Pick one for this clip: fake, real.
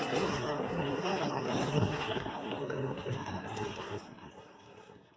fake